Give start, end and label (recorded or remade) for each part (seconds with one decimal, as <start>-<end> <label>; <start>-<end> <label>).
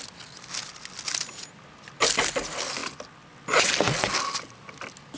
0.0-5.2 recorded